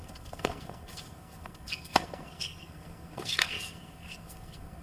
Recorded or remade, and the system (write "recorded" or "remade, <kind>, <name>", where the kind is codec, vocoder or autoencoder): remade, codec, SNAC